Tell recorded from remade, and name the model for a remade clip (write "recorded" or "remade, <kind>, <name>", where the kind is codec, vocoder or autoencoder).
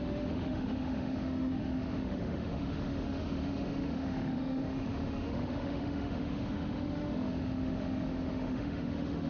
remade, autoencoder, DAC-VAE